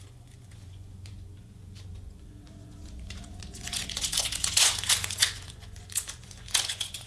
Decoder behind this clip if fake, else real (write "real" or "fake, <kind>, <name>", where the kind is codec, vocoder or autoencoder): fake, vocoder, Vocos